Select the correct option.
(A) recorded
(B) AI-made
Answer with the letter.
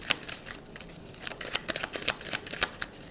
A